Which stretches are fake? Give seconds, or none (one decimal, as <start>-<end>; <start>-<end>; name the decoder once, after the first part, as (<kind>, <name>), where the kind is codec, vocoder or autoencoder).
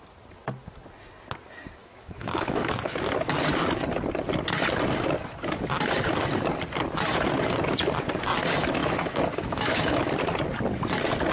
1.8-3.0 (autoencoder, DAC-VAE); 8.8-10.1